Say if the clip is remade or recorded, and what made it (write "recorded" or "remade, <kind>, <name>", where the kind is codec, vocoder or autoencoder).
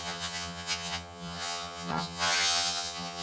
remade, vocoder, HiFi-GAN